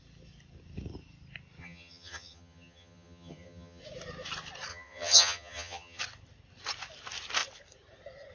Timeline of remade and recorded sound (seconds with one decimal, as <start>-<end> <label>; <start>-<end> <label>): 0.0-1.6 recorded; 1.6-3.8 remade; 3.8-4.7 recorded; 4.7-6.0 remade; 6.0-8.3 recorded